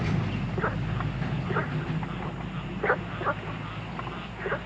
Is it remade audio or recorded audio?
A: recorded